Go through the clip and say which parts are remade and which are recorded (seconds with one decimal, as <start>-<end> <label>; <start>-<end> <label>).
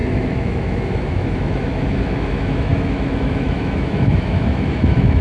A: 0.0-5.2 remade